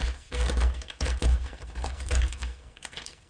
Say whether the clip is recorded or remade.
remade